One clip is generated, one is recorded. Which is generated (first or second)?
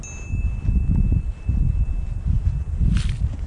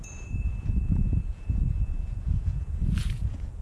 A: second